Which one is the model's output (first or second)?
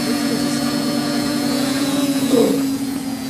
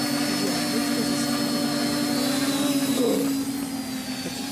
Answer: first